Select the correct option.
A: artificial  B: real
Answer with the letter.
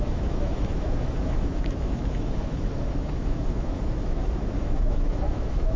A